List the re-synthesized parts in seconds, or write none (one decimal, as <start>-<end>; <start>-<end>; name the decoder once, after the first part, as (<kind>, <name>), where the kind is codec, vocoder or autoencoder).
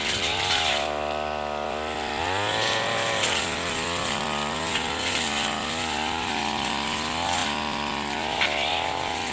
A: none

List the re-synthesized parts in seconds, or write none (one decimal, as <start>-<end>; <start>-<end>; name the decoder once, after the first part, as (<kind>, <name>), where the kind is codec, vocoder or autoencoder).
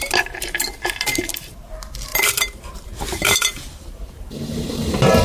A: 2.1-5.2 (vocoder, BigVGAN v2)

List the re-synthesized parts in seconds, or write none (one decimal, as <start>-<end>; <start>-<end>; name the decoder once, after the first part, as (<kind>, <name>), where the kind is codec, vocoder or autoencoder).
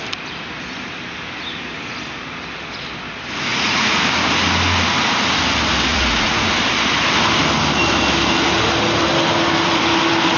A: 3.5-4.0 (vocoder, Vocos); 5.9-6.5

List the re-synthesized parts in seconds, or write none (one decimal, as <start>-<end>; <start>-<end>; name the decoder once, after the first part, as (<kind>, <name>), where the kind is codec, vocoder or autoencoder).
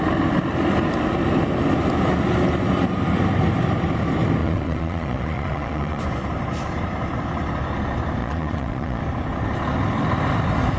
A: 4.4-6.0 (vocoder, Vocos); 8.2-9.0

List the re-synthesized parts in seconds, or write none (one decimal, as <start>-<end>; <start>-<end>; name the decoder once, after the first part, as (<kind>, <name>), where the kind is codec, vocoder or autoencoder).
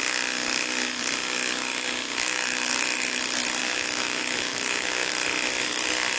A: 2.2-3.2 (autoencoder, DAC-VAE); 3.6-5.1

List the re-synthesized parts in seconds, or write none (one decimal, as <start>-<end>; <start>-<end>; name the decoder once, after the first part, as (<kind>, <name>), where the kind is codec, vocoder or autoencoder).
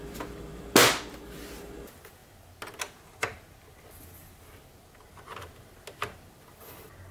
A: none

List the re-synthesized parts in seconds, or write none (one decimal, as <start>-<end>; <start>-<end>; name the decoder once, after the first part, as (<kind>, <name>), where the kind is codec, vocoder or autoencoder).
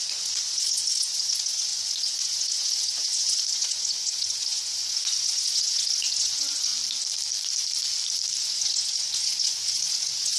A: 0.0-6.7 (vocoder, Vocos); 8.4-10.4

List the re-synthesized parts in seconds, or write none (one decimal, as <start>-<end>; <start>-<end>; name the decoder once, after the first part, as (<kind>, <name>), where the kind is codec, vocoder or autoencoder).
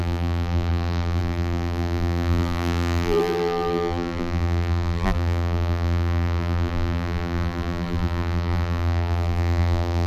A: 0.0-10.1 (vocoder, BigVGAN v2)